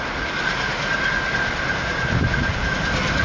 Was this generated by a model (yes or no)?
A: no